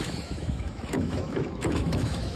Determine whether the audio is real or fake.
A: fake